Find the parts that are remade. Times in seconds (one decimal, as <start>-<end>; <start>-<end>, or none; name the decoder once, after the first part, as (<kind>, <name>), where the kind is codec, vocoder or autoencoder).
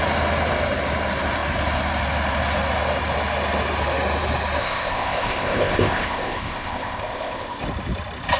4.6-7.6 (codec, ZipCodec)